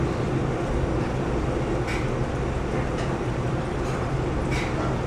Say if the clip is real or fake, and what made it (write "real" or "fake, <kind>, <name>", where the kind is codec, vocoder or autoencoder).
real